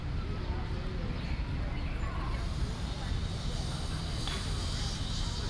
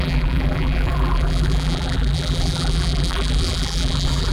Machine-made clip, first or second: second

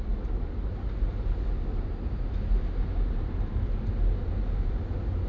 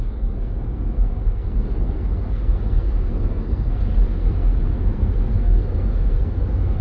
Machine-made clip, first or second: second